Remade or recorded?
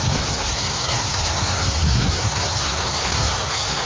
remade